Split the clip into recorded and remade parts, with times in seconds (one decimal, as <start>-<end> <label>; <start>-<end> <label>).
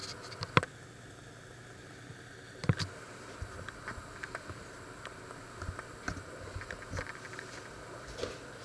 0.0-8.6 recorded